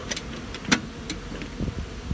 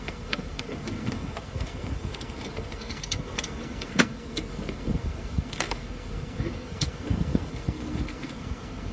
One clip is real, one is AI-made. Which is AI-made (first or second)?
second